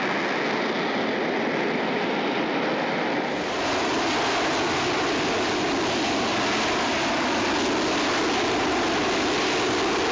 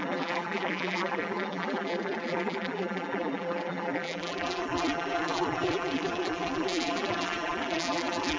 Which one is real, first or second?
first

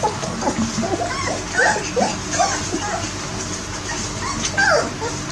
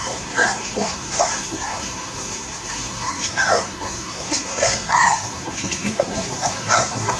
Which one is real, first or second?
first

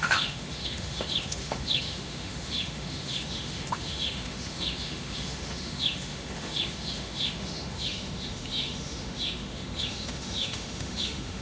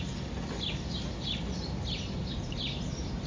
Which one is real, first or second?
second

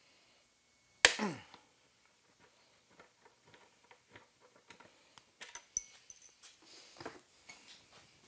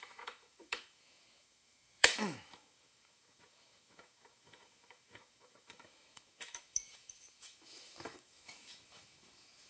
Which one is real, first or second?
first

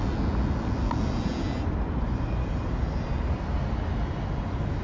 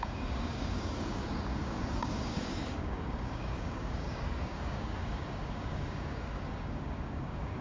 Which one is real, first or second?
first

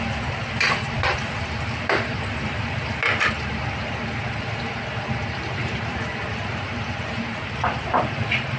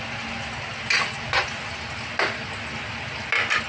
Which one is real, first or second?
second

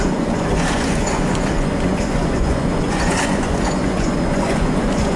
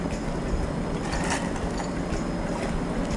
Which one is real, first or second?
second